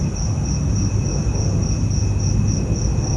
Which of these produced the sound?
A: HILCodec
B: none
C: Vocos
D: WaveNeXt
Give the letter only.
B